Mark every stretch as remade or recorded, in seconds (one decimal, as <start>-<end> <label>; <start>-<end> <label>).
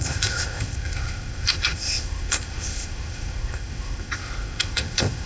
0.0-5.3 remade